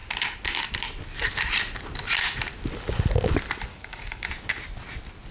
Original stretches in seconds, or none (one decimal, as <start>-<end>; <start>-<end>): 0.0-3.7; 4.3-5.3